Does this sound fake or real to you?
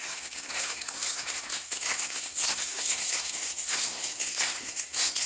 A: fake